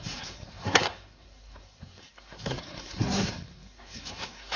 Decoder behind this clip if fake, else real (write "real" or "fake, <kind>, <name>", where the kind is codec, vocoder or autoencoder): fake, codec, SNAC